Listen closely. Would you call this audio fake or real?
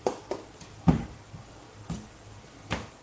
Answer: real